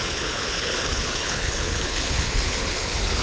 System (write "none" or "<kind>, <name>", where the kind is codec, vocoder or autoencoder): codec, HILCodec